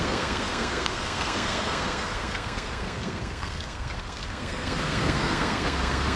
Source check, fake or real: fake